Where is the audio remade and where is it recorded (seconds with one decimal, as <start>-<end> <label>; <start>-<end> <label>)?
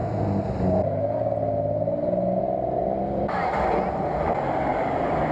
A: 0.0-2.8 recorded; 2.8-3.5 remade; 3.5-4.7 recorded; 4.7-5.3 remade